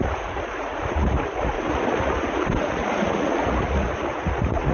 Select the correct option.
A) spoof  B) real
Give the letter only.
A